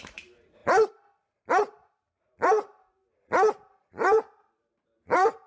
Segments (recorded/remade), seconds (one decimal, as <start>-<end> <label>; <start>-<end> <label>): 0.0-3.0 remade; 3.0-3.8 recorded; 3.8-5.5 remade